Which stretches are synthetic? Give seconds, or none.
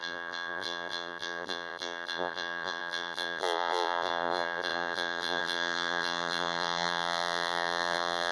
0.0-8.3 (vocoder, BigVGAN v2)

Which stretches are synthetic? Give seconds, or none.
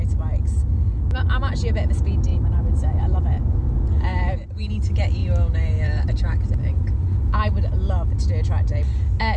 2.3-3.4 (vocoder, BigVGAN v2); 5.2-6.8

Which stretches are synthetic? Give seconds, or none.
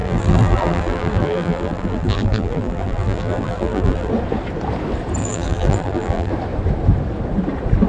0.0-4.1 (vocoder, BigVGAN v2); 5.2-6.3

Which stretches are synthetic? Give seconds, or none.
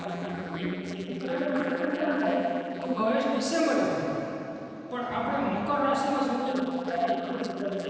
0.0-3.0 (vocoder, BigVGAN v2); 6.5-7.9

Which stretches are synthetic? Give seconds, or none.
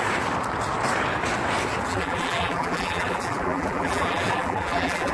1.9-5.1 (vocoder, BigVGAN v2)